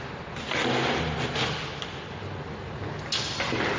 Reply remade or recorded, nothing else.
recorded